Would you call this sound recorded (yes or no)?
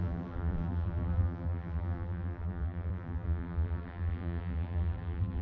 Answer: no